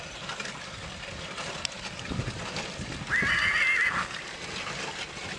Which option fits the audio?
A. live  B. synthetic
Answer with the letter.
A